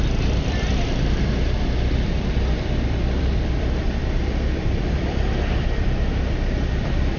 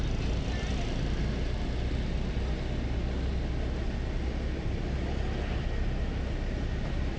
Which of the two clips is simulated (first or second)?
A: first